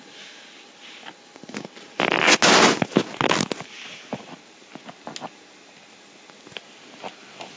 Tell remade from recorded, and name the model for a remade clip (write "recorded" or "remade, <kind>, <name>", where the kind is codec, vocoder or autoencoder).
recorded